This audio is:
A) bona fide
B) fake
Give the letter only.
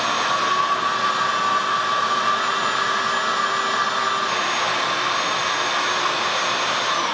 A